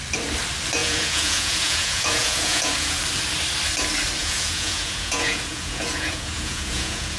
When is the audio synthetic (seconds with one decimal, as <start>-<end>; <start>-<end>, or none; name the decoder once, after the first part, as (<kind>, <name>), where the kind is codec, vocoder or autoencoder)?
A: 0.8-3.0 (vocoder, Vocos); 4.2-7.2